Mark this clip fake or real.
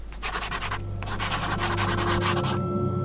real